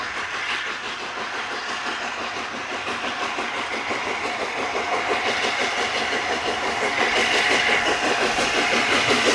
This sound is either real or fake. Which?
real